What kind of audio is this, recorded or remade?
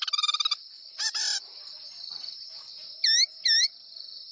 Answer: recorded